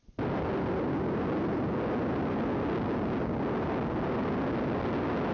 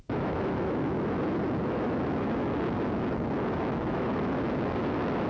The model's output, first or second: second